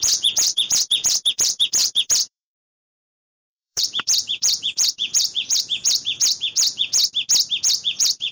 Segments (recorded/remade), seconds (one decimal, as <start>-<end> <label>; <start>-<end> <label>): 0.0-7.0 remade; 7.0-7.6 recorded; 7.6-8.3 remade

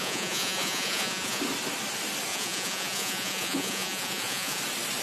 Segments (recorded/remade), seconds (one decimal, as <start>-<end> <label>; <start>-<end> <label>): 0.0-1.4 remade; 1.4-2.3 recorded; 2.3-4.6 remade; 4.6-5.0 recorded

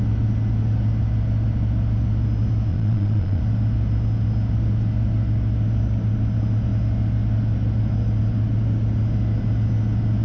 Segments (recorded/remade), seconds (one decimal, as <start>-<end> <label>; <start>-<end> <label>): 0.0-2.7 recorded; 2.7-3.4 remade; 3.4-10.2 recorded

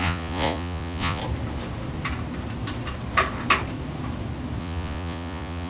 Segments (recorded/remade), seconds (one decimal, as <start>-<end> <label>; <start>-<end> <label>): 0.0-1.2 remade; 1.2-4.6 recorded; 4.6-5.7 remade

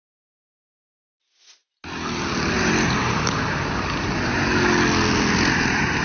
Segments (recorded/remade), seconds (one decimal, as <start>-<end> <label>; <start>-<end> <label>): 0.0-6.0 recorded